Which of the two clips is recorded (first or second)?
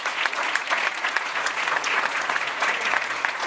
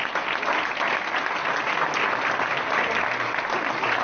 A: second